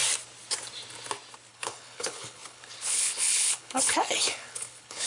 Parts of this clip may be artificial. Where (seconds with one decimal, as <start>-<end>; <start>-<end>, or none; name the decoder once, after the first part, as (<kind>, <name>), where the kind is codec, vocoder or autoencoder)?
1.5-5.1 (codec, HILCodec)